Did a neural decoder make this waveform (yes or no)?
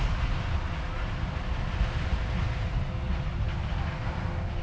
no